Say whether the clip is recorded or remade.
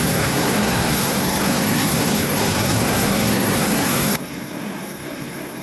remade